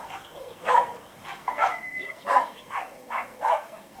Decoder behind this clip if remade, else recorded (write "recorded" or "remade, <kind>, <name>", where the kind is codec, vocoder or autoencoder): remade, codec, SNAC